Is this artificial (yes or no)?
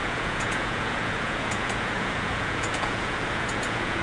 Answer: yes